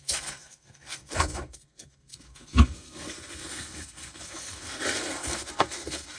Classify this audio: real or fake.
fake